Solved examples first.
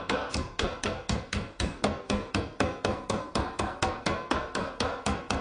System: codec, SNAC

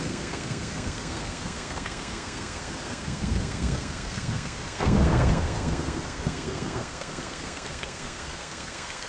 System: codec, SNAC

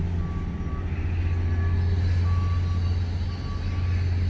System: none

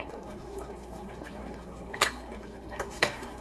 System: codec, SNAC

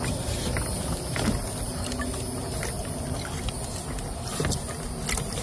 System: none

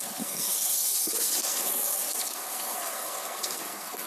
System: codec, SNAC